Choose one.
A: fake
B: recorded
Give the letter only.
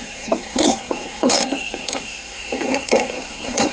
A